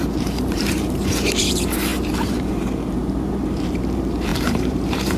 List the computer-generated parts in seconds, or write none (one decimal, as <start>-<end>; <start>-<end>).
0.0-5.2